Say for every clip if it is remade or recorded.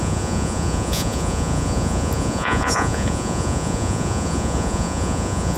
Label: remade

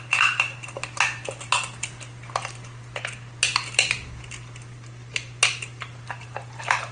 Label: recorded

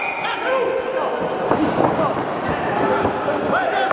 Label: recorded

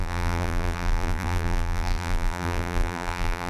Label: remade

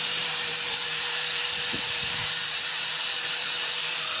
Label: remade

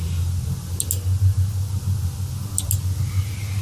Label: recorded